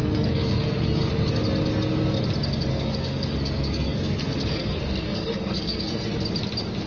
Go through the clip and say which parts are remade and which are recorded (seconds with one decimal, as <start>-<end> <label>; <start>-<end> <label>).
0.0-1.1 remade; 1.1-2.7 recorded; 2.7-6.2 remade; 6.2-6.9 recorded